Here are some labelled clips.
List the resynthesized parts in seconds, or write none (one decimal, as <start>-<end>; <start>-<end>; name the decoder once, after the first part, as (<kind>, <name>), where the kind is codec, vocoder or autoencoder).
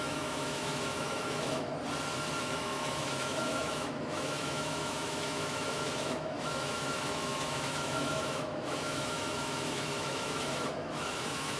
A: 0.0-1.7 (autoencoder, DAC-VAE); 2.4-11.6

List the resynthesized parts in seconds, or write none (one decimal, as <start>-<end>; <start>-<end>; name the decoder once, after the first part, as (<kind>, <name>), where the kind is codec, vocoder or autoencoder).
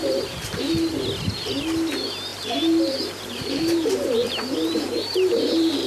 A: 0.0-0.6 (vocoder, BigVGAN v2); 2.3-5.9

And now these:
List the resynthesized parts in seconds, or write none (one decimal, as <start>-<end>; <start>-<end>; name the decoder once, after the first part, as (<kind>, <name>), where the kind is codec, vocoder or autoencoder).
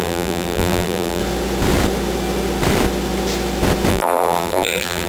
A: 0.0-1.2 (vocoder, BigVGAN v2); 3.9-5.1